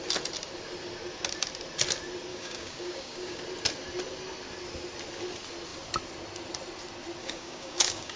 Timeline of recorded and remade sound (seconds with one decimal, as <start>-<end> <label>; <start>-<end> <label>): 0.0-2.3 recorded; 2.3-3.4 remade; 3.4-7.2 recorded; 7.2-8.2 remade